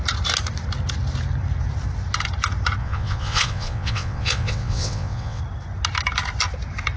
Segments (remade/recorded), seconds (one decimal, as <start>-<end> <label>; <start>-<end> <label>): 0.0-2.8 recorded; 2.8-5.4 remade; 5.4-7.0 recorded